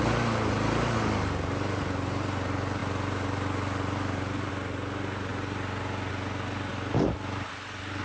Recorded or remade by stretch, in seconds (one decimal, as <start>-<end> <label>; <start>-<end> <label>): 0.0-8.0 recorded